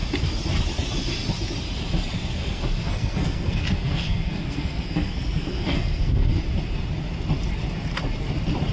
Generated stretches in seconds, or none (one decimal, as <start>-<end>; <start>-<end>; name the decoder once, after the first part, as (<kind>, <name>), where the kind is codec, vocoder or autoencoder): 2.4-6.4 (codec, SNAC)